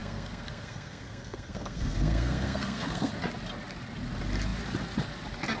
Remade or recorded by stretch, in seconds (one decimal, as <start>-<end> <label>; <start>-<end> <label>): 0.0-3.1 remade; 3.1-5.6 recorded